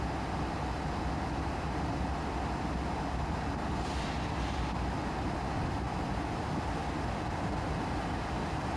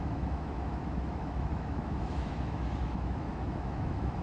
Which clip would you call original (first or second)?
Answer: first